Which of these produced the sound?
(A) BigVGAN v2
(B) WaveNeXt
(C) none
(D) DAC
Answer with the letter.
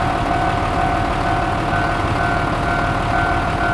C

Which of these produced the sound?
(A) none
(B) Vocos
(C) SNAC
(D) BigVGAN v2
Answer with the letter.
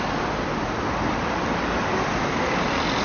A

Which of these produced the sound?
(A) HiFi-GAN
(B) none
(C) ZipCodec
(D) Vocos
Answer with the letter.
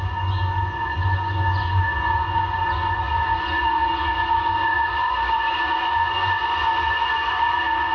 D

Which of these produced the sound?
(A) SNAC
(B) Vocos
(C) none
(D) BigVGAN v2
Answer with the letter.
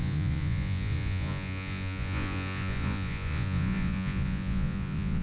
B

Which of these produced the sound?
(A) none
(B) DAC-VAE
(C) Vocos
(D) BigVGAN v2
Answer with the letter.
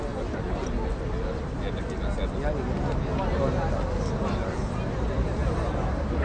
A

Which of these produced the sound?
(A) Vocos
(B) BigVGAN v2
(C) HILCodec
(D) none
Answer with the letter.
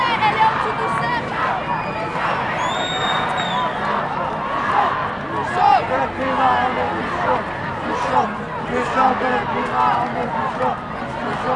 D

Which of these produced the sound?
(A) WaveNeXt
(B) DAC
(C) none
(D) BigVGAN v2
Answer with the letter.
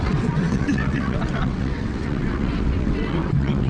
A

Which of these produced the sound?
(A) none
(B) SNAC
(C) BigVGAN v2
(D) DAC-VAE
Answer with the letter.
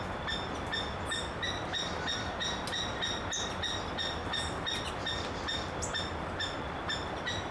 A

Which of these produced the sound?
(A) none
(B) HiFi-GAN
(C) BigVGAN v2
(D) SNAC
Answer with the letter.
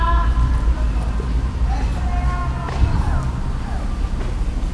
A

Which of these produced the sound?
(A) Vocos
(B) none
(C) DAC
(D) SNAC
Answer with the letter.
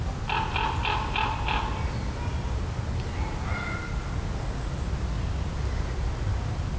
B